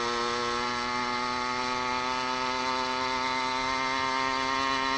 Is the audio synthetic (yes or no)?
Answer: no